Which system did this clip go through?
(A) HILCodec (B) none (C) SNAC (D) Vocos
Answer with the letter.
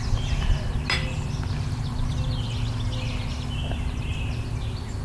B